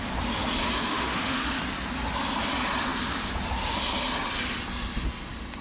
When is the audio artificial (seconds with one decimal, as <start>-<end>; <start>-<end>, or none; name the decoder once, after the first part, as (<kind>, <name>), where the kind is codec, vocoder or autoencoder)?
0.9-1.6 (autoencoder, DAC-VAE)